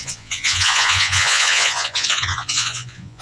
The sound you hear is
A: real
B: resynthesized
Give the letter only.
B